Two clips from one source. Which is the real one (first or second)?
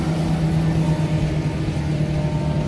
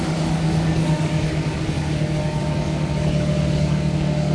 first